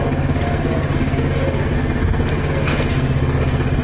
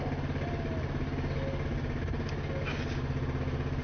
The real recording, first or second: second